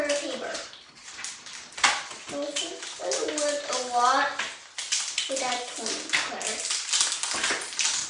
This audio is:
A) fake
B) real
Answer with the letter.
B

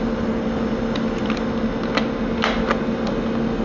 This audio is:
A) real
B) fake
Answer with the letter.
A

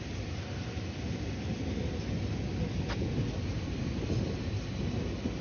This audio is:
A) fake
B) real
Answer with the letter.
B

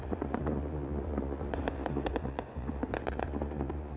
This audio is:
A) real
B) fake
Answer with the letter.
B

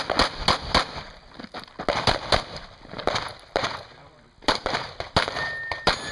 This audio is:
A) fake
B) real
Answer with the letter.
B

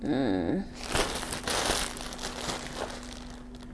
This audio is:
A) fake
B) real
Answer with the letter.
B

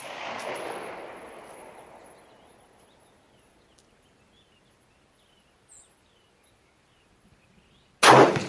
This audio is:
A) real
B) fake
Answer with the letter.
A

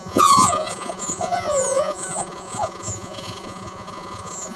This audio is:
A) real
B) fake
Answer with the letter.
B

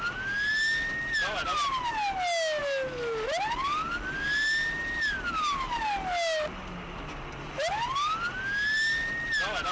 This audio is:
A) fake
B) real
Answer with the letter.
B